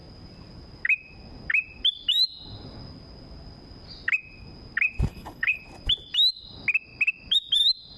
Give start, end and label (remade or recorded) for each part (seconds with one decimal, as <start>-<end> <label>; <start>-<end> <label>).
0.0-5.1 recorded; 5.1-5.6 remade; 5.6-8.0 recorded